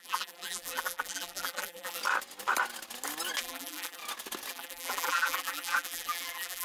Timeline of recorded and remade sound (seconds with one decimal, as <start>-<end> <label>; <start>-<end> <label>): 0.0-2.0 remade; 2.0-3.4 recorded; 3.4-4.0 remade; 4.0-4.5 recorded; 4.5-6.6 remade